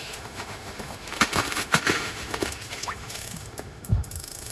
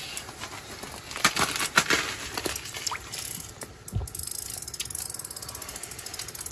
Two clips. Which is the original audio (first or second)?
second